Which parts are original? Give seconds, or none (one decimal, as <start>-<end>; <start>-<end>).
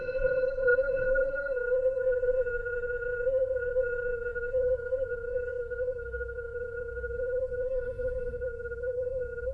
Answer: none